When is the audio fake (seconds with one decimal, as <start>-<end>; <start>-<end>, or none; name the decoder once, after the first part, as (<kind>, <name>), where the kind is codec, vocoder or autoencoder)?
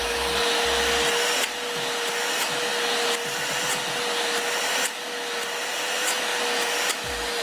none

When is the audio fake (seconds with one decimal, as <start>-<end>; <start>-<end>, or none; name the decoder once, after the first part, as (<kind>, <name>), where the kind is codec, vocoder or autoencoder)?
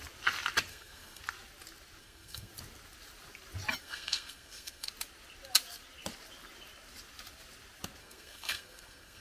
0.7-1.2 (codec, SNAC); 2.0-2.5; 3.8-4.9; 8.0-9.2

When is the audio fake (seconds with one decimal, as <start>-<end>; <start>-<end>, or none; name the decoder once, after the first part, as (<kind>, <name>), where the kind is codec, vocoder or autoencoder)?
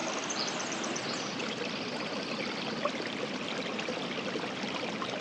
none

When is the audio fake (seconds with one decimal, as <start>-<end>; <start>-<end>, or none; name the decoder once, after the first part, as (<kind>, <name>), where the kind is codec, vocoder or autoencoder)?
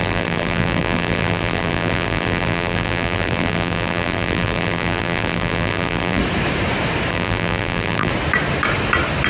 0.0-6.2 (vocoder, BigVGAN v2); 7.1-8.1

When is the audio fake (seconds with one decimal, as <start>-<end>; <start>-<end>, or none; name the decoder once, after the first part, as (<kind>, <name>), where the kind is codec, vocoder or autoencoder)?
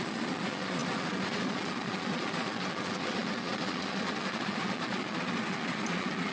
0.0-6.3 (vocoder, Vocos)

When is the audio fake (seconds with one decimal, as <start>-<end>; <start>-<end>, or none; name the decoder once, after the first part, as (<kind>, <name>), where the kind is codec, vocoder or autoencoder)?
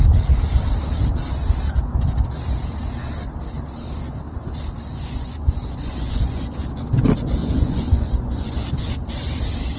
4.9-6.5 (vocoder, Vocos); 7.4-8.8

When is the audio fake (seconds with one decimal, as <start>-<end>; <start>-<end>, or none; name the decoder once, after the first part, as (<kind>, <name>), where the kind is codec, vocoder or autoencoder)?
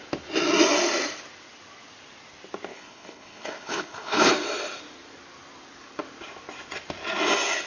2.7-4.3 (codec, HILCodec)